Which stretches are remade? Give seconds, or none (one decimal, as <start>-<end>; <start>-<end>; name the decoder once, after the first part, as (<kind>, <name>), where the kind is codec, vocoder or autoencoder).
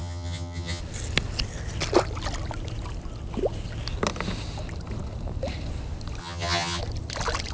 0.0-0.8 (vocoder, HiFi-GAN); 6.2-6.8